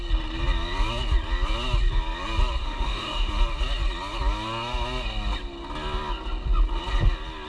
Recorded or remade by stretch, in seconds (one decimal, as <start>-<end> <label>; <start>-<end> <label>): 0.0-2.6 recorded; 2.6-3.3 remade; 3.3-7.5 recorded